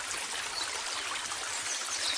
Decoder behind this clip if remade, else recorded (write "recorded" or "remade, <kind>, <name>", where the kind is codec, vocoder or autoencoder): recorded